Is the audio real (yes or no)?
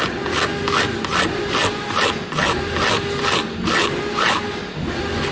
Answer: yes